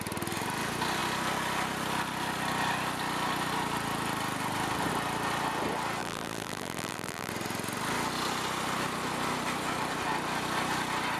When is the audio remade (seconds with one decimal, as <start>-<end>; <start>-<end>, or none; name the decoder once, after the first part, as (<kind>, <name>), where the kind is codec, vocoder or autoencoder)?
6.0-7.3 (vocoder, BigVGAN v2)